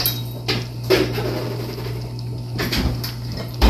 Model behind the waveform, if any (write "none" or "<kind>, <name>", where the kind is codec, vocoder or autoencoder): none